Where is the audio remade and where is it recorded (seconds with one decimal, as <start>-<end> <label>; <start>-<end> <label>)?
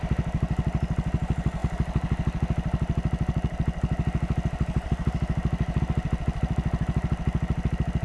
0.0-8.0 recorded